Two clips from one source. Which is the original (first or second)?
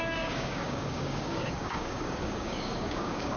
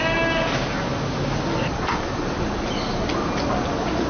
second